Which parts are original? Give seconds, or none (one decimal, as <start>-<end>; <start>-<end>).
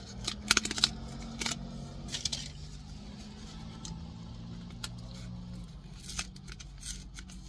0.0-7.5